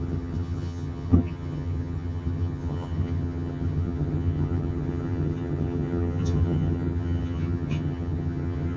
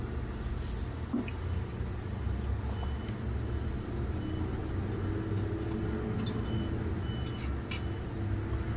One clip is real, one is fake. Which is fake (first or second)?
first